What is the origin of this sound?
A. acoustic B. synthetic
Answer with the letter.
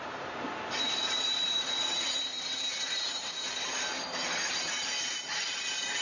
B